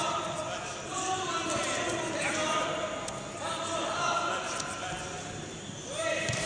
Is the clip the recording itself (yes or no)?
yes